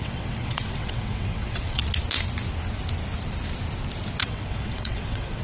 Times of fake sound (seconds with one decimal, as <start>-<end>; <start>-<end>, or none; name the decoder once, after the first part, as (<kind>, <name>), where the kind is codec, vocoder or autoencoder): 0.0-1.8 (vocoder, WaveNeXt); 4.2-5.4